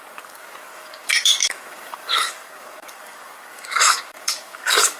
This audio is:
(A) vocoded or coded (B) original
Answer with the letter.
A